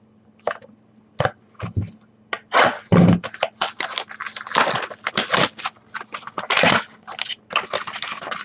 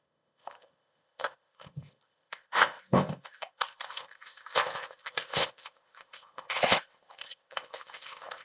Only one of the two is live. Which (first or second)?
first